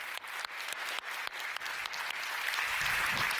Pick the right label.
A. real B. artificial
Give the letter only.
A